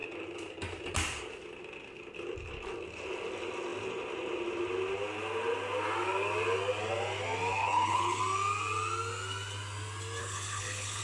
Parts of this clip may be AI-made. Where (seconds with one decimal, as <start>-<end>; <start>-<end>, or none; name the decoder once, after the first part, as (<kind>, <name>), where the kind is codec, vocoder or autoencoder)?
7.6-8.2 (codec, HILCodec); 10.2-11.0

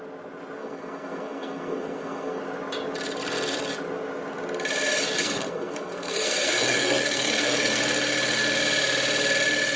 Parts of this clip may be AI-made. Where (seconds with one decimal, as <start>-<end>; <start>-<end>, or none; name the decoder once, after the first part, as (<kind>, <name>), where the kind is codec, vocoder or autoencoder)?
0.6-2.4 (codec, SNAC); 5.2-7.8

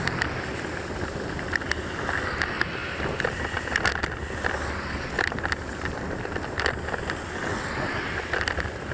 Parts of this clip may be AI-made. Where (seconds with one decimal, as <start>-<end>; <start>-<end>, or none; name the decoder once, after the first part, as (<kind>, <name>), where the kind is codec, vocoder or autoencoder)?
none